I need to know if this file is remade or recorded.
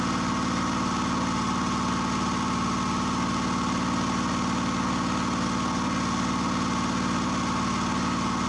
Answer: recorded